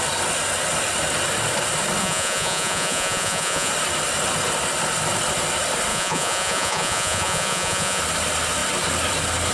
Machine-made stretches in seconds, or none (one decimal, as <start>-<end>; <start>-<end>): 2.0-3.7; 5.9-8.0